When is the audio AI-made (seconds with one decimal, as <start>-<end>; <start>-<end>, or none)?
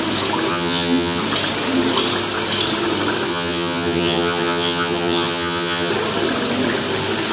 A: 0.5-1.2; 3.3-5.9